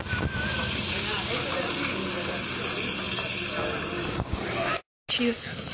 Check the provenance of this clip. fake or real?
real